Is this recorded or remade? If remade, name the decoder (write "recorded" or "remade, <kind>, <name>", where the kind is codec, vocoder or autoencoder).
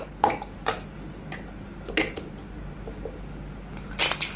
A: recorded